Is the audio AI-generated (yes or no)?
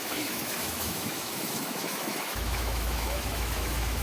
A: yes